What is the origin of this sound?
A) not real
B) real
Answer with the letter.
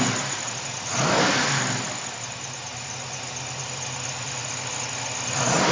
B